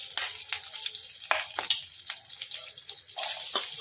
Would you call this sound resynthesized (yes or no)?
no